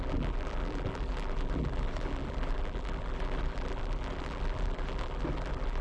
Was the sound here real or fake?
fake